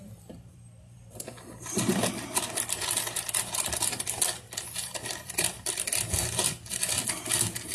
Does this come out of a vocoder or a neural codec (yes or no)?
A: yes